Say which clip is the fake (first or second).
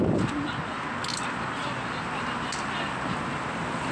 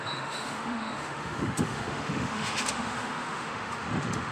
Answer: second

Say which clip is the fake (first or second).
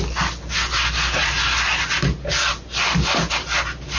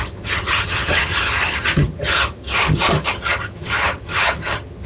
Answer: second